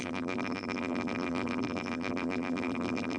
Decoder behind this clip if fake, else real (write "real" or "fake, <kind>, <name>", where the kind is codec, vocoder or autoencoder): fake, vocoder, BigVGAN v2